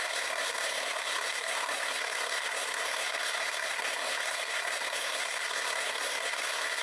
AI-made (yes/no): yes